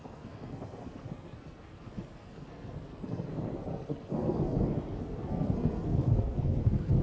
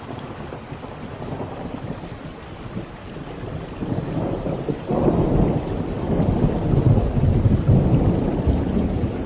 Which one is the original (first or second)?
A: second